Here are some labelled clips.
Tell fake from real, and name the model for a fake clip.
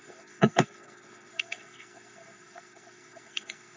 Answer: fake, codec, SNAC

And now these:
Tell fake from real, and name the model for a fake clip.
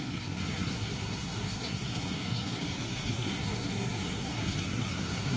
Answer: fake, codec, SNAC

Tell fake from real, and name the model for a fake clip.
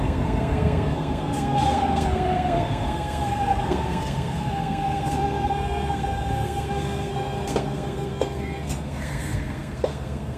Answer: fake, codec, SNAC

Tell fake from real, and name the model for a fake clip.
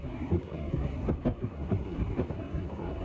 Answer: fake, codec, SNAC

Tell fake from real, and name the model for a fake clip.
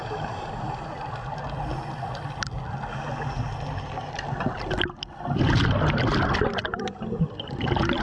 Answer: real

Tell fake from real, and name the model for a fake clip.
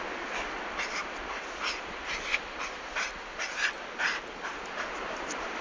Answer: real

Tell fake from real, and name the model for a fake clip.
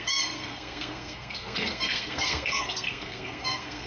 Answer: fake, codec, SNAC